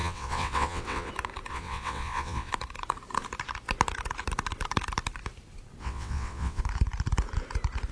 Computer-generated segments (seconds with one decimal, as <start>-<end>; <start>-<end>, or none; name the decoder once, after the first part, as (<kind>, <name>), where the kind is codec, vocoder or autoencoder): 0.0-1.1 (vocoder, WaveNeXt); 1.5-2.5; 5.8-6.6